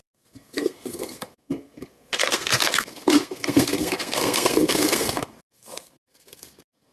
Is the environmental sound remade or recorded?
remade